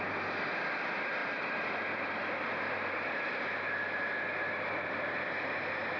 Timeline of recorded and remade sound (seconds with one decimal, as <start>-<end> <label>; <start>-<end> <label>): 0.0-1.2 recorded; 1.2-2.0 remade; 2.0-6.0 recorded

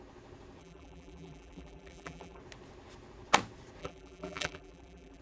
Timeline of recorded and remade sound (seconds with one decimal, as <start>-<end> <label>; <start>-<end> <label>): 0.0-0.6 recorded; 0.6-2.4 remade; 2.4-3.8 recorded; 3.8-5.2 remade

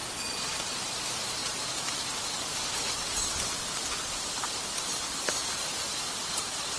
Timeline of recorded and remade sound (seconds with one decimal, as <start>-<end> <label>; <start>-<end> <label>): 0.0-6.8 recorded

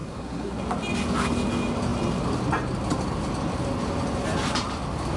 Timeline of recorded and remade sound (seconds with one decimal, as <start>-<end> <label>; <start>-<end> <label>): 0.0-0.6 remade; 0.6-5.2 recorded

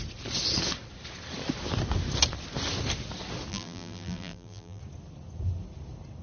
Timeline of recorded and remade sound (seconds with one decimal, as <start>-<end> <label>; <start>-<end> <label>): 0.0-3.5 recorded; 3.5-4.8 remade; 4.8-6.2 recorded

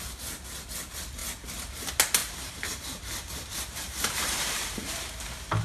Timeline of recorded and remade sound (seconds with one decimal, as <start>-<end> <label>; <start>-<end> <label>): 0.0-2.2 recorded; 2.2-2.8 remade; 2.8-3.9 recorded; 3.9-5.1 remade; 5.1-5.6 recorded